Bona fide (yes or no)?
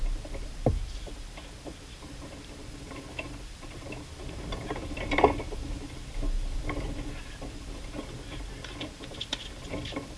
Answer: no